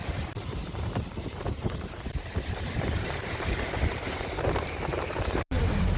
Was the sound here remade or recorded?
remade